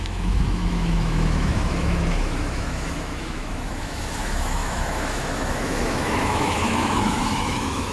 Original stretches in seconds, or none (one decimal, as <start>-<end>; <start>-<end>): none